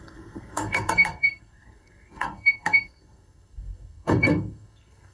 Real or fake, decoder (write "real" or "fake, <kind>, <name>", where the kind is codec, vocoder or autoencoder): fake, codec, SNAC